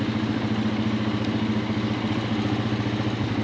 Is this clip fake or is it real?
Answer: real